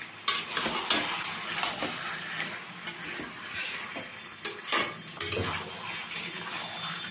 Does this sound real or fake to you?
real